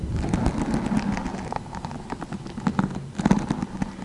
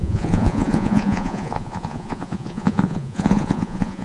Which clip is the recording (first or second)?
first